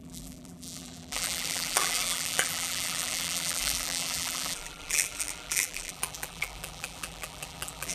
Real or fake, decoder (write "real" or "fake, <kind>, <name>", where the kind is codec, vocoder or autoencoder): fake, vocoder, BigVGAN v2